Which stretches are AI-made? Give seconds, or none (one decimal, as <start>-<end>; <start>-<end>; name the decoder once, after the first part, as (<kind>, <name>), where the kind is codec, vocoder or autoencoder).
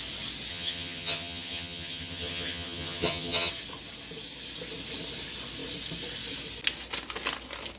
0.5-3.5 (vocoder, HiFi-GAN)